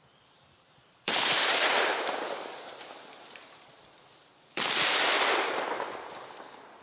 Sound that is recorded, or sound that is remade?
remade